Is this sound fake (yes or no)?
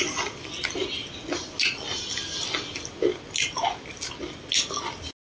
no